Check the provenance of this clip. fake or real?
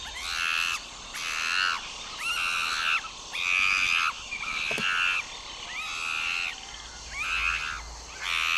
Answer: real